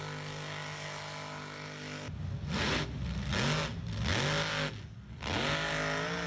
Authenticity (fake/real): real